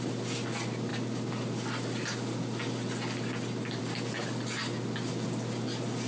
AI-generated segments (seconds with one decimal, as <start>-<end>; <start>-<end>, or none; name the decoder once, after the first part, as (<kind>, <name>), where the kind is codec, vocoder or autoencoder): none